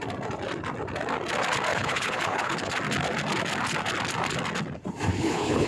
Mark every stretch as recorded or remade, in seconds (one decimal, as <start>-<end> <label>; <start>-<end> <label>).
0.0-1.7 recorded; 1.7-2.7 remade; 2.7-5.1 recorded; 5.1-5.7 remade